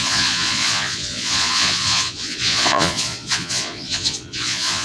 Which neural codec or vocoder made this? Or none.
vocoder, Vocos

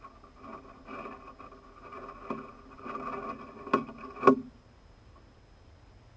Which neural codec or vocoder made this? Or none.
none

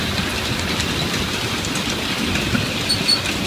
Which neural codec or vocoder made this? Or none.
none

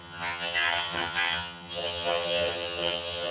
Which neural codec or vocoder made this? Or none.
vocoder, HiFi-GAN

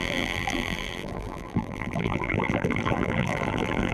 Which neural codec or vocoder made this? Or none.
vocoder, BigVGAN v2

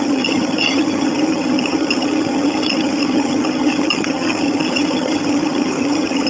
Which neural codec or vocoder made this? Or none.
vocoder, HiFi-GAN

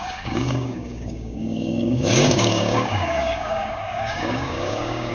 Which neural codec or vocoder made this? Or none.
codec, DAC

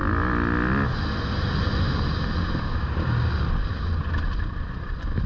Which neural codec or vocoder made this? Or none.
none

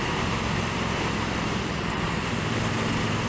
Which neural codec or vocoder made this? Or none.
vocoder, BigVGAN v2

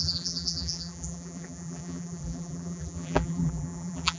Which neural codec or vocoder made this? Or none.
vocoder, BigVGAN v2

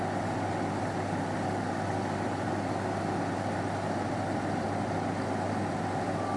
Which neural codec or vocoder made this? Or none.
none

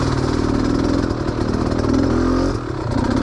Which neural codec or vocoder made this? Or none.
none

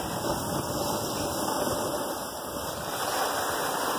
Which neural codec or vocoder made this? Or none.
none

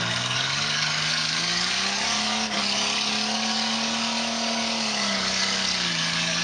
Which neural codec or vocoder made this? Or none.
codec, DAC